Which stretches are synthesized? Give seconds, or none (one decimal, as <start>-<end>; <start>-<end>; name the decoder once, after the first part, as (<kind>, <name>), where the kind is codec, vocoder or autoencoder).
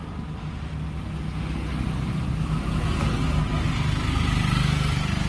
none